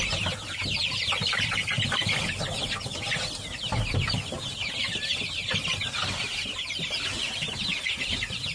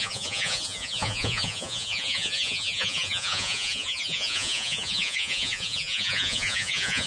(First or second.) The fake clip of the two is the second